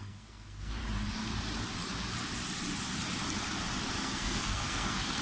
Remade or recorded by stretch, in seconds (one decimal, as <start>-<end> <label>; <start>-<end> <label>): 0.0-0.8 remade; 0.8-3.9 recorded; 3.9-5.2 remade